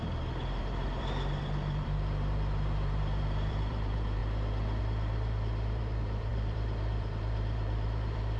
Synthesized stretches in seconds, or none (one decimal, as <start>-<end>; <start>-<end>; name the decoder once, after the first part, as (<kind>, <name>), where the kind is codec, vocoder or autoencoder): 0.0-4.2 (vocoder, BigVGAN v2); 4.8-8.4